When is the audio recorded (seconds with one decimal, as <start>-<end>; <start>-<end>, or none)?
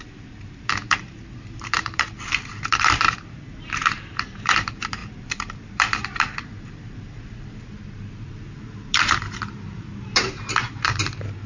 none